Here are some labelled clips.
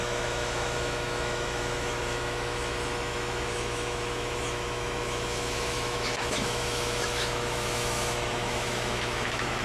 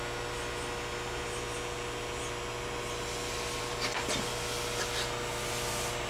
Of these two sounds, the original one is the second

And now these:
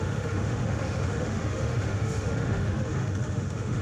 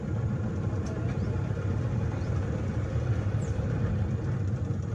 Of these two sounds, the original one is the second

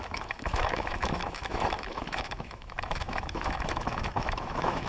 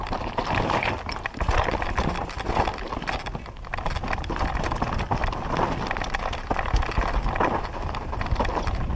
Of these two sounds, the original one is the second